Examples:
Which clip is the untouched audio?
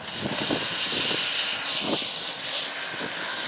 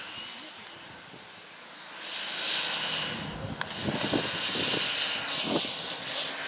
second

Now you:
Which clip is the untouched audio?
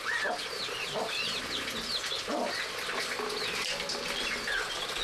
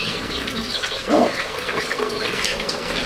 first